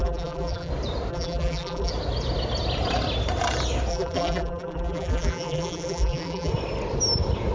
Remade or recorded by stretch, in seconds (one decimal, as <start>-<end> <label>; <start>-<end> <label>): 0.0-0.7 remade; 0.7-1.1 recorded; 1.1-1.9 remade; 1.9-3.9 recorded; 3.9-6.5 remade; 6.5-7.5 recorded